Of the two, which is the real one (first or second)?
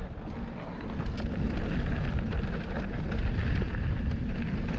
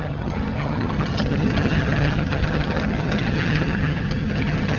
first